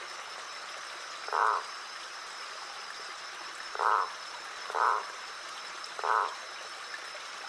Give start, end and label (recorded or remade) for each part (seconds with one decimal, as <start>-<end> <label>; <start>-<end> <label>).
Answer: 0.0-1.4 recorded; 1.4-5.9 remade; 5.9-7.5 recorded